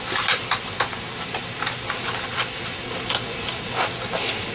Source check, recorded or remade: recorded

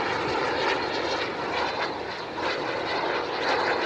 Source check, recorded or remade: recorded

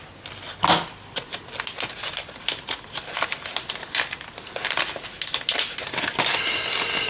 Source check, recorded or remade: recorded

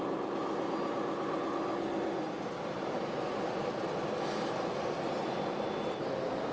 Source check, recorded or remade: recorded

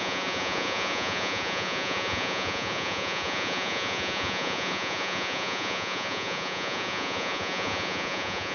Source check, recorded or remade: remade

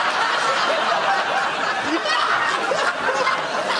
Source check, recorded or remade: recorded